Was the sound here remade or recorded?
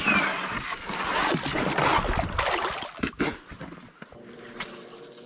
recorded